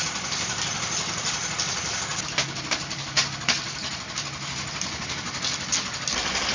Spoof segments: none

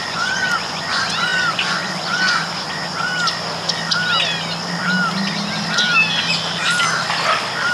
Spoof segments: 0.0-3.1 (vocoder, Vocos)

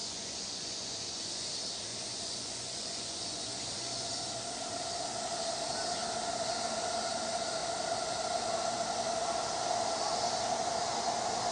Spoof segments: 0.0-1.5 (vocoder, Vocos); 1.9-4.1

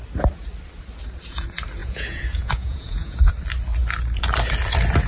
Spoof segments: 1.8-3.3 (vocoder, Vocos)

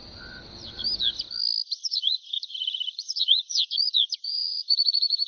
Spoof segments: 1.8-5.3 (vocoder, Vocos)

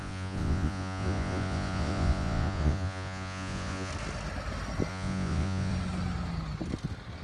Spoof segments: 0.0-3.9 (vocoder, Vocos); 4.9-5.7

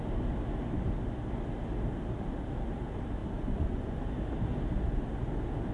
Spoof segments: 3.2-4.0 (vocoder, Vocos)